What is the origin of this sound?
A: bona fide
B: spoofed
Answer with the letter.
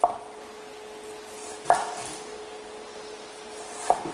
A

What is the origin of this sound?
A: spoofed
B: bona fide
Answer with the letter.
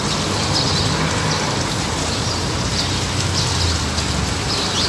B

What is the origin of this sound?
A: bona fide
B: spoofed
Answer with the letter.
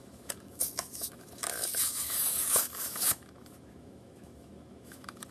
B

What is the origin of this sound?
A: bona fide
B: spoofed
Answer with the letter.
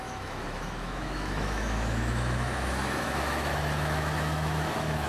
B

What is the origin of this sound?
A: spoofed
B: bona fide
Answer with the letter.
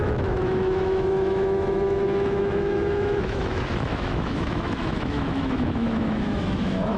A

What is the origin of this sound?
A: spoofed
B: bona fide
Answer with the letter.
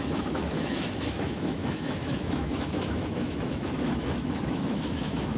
A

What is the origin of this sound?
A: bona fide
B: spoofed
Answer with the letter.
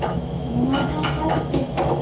B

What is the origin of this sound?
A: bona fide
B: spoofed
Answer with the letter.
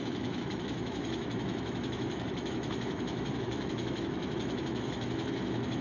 B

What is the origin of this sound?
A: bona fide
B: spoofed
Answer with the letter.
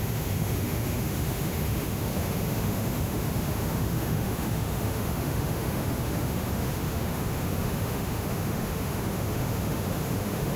B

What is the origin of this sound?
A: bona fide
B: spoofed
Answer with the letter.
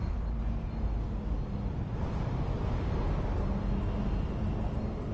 A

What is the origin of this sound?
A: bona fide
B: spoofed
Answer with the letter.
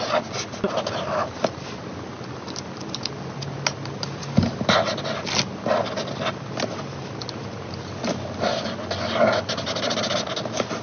A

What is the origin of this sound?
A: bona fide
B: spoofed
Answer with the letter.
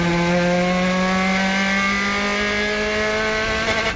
A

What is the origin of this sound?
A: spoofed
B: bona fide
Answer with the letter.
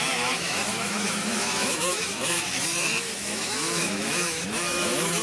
A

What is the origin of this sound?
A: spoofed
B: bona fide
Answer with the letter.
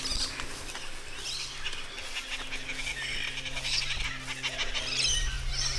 B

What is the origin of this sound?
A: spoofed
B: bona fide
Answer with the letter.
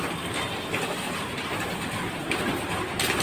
B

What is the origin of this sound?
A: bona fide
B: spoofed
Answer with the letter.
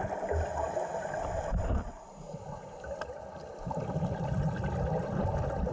A